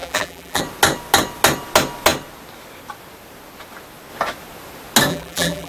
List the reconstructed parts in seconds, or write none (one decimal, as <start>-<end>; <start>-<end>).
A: 0.0-0.6; 5.1-5.7